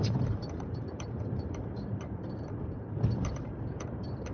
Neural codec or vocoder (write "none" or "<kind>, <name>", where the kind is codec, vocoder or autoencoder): vocoder, BigVGAN v2